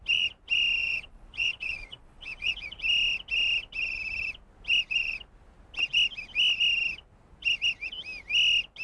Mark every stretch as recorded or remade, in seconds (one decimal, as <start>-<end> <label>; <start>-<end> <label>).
0.0-0.8 recorded; 0.8-2.5 remade; 2.5-8.8 recorded